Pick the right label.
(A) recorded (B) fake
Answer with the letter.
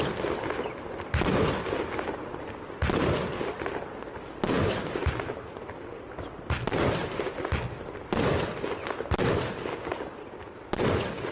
A